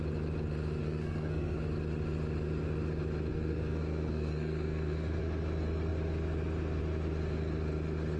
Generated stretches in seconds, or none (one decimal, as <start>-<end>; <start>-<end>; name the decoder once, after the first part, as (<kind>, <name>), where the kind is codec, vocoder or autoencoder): 0.8-1.6 (codec, SNAC); 3.3-5.2